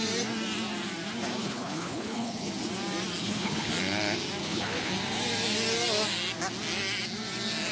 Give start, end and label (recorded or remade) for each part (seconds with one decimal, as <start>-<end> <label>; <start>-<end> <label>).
0.0-1.4 recorded; 1.4-2.5 remade; 2.5-3.2 recorded; 3.2-3.7 remade; 3.7-4.4 recorded; 4.4-4.9 remade; 4.9-7.7 recorded

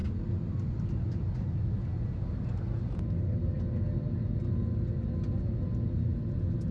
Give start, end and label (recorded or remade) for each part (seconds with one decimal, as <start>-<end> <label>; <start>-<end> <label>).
0.0-6.7 recorded

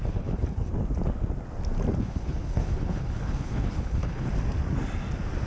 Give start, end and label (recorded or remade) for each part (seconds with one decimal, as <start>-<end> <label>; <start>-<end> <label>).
0.0-0.7 remade; 0.7-2.0 recorded; 2.0-4.3 remade; 4.3-5.5 recorded

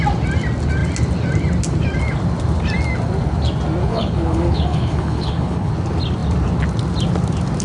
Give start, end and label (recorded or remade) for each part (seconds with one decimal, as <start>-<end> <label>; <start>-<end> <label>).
0.0-3.8 recorded; 3.8-5.7 remade; 5.7-7.6 recorded

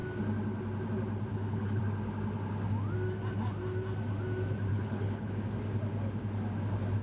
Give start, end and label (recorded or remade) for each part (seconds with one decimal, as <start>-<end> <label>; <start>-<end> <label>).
0.0-1.3 recorded; 1.3-1.8 remade; 1.8-4.7 recorded; 4.7-5.3 remade; 5.3-7.0 recorded

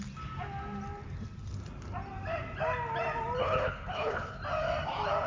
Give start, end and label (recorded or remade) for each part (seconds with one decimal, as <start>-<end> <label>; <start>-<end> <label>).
0.0-3.4 recorded; 3.4-4.4 remade; 4.4-5.3 recorded